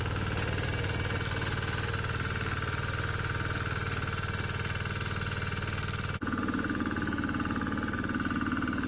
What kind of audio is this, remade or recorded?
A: recorded